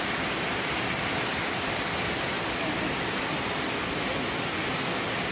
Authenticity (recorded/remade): recorded